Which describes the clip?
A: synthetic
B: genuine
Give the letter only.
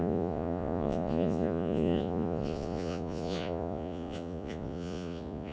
A